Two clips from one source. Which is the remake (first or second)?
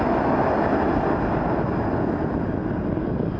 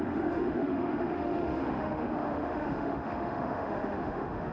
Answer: second